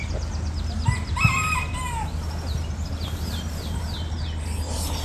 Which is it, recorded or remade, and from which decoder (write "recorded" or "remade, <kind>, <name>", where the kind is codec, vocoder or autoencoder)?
recorded